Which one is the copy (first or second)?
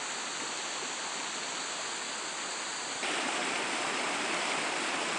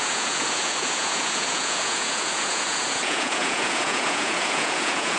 second